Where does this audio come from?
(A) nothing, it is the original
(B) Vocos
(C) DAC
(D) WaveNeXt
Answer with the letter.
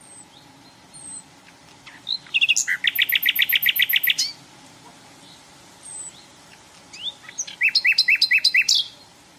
A